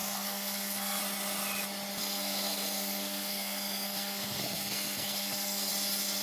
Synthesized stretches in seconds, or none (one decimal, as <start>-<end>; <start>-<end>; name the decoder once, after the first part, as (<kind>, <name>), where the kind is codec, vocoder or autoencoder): 0.0-1.0 (codec, SNAC); 2.0-5.7